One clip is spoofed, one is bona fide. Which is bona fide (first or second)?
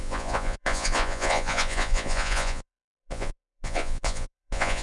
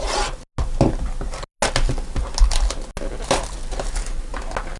second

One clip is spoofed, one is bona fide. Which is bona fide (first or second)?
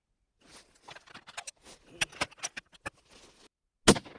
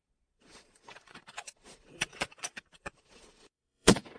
first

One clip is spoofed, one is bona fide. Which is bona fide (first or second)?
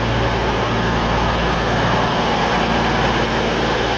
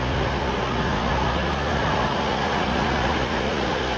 first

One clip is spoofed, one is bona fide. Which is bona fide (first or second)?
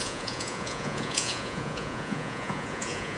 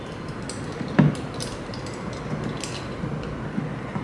second